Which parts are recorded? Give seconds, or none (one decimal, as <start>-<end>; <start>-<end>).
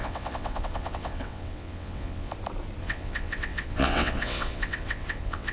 2.3-2.8